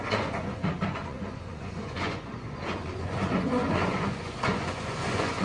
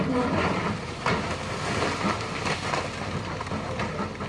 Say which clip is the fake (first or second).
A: first